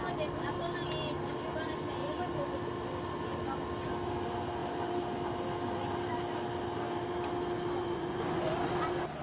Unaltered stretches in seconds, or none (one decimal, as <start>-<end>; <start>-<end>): 0.0-7.8; 8.5-9.2